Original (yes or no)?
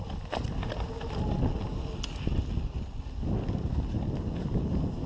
yes